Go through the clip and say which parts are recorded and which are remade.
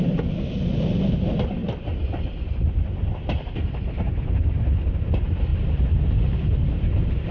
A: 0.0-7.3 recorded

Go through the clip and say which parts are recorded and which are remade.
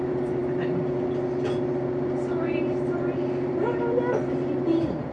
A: 0.0-5.1 recorded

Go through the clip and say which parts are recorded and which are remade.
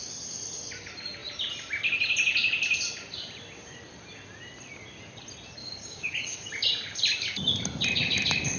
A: 0.0-5.6 recorded; 5.6-6.5 remade; 6.5-8.6 recorded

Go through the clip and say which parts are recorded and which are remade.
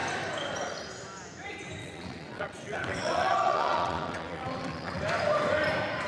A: 0.0-1.8 recorded; 1.8-5.0 remade; 5.0-6.1 recorded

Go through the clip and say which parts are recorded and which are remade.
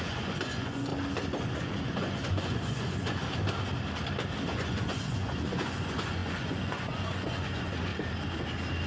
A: 0.0-0.9 remade; 0.9-1.4 recorded; 1.4-3.2 remade; 3.2-4.4 recorded; 4.4-7.9 remade; 7.9-8.9 recorded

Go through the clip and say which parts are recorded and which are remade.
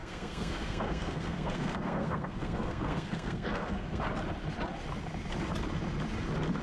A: 0.0-4.0 remade; 4.0-6.6 recorded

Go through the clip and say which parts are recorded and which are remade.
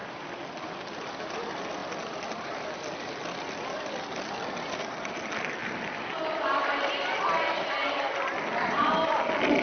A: 0.0-1.8 recorded; 1.8-5.1 remade; 5.1-5.6 recorded; 5.6-9.2 remade; 9.2-9.6 recorded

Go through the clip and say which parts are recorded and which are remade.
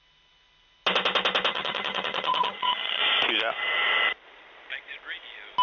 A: 0.0-1.5 recorded; 1.5-3.0 remade; 3.0-5.6 recorded